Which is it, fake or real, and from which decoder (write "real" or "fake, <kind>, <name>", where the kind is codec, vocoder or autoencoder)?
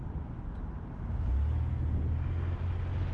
real